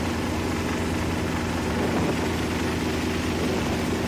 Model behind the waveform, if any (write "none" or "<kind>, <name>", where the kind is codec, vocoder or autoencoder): none